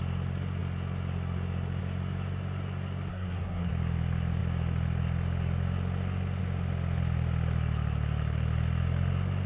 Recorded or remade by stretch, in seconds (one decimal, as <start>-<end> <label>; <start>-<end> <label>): 0.0-3.1 recorded; 3.1-3.7 remade; 3.7-9.5 recorded